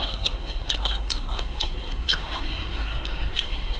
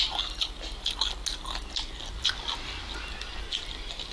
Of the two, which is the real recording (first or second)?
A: second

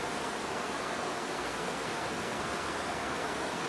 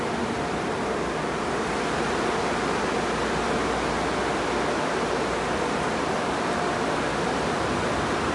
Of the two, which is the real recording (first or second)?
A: second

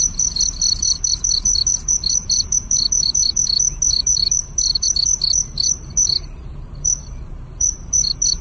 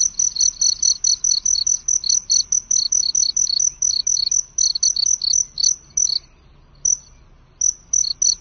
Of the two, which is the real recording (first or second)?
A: second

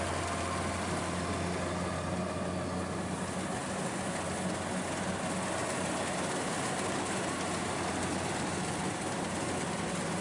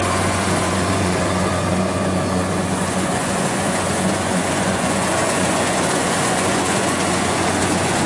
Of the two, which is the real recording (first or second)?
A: first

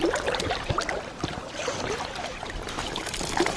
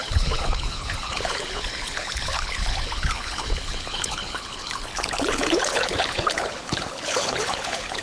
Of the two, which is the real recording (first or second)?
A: first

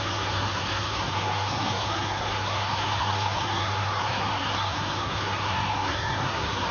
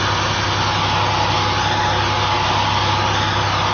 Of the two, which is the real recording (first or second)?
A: second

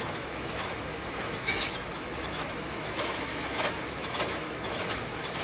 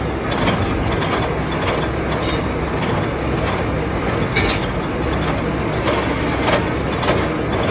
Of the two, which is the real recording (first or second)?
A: second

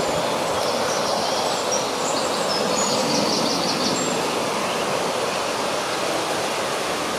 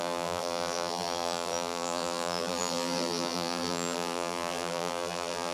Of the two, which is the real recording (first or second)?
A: first